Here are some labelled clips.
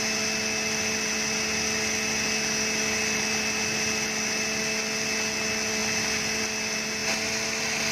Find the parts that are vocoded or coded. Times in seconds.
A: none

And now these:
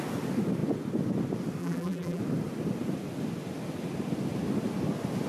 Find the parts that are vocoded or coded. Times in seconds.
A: 1.6-2.2 (vocoder, BigVGAN v2)